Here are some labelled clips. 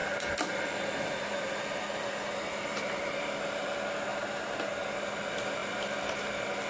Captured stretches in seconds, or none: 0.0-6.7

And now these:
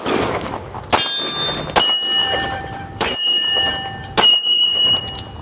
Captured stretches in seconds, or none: 0.0-2.2; 3.7-4.3; 5.0-5.4

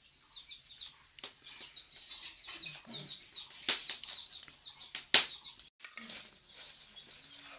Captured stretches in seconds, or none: 0.0-7.6